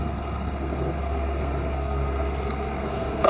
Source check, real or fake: fake